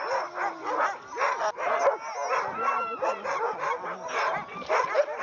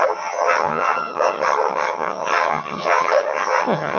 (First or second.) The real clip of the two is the first